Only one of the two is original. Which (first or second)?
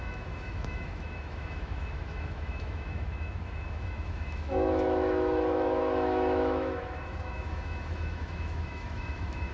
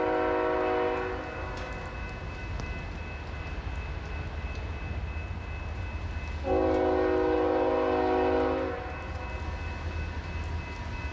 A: second